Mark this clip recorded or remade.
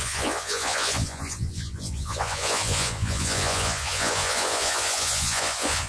remade